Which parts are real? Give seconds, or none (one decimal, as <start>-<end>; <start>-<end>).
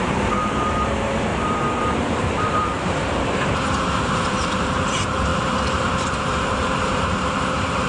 none